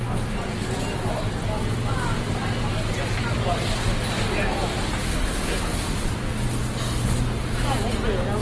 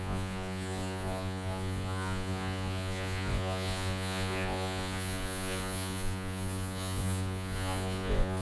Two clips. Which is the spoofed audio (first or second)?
second